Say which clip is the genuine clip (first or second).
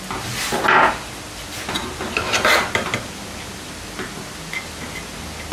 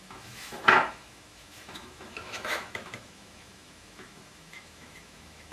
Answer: first